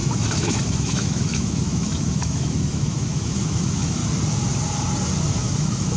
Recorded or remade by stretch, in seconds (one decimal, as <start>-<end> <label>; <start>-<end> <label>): 0.0-4.0 remade; 4.0-5.3 recorded; 5.3-6.0 remade